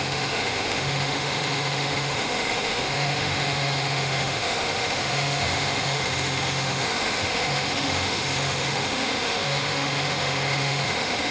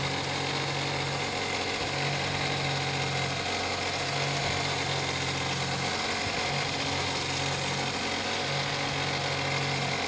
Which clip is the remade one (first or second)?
first